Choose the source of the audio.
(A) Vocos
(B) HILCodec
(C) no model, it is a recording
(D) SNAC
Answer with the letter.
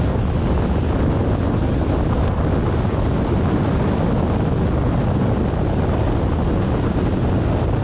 C